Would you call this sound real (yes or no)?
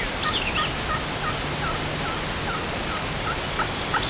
yes